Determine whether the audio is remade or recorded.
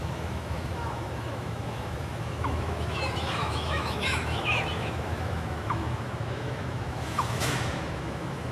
remade